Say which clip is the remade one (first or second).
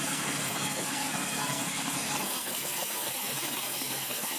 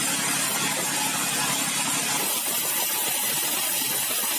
first